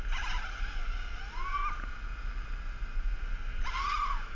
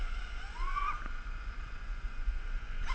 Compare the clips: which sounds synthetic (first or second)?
second